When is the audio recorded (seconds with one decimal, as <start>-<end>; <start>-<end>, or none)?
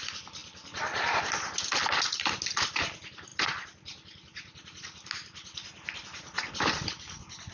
0.0-7.5